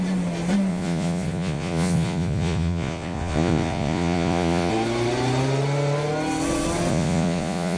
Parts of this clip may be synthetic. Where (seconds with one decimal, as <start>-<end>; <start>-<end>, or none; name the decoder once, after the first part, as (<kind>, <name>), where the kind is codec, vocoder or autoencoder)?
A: 0.7-4.7 (vocoder, Vocos); 6.9-7.8

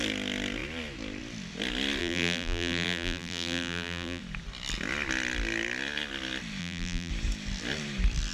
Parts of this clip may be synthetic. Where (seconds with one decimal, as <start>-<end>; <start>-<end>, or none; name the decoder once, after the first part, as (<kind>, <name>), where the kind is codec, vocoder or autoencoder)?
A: 2.0-4.2 (vocoder, BigVGAN v2); 6.6-7.1

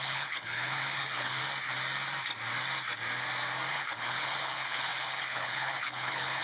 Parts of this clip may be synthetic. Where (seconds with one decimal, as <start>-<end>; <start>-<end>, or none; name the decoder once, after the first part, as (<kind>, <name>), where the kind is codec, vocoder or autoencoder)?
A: 0.0-1.4 (codec, HILCodec); 3.7-6.4

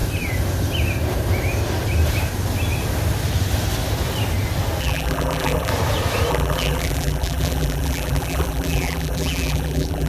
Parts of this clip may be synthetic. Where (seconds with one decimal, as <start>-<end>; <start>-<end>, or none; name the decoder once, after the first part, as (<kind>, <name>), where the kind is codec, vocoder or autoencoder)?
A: 4.8-5.7 (vocoder, BigVGAN v2); 6.3-10.1

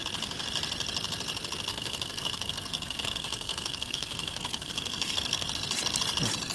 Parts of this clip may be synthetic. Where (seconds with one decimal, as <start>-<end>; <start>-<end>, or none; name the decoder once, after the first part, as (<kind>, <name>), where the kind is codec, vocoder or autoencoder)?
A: 1.7-5.5 (codec, SNAC)